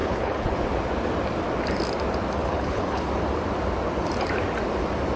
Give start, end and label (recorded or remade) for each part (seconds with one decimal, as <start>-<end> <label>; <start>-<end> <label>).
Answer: 0.0-0.5 remade; 0.5-2.4 recorded; 2.4-3.1 remade; 3.1-5.2 recorded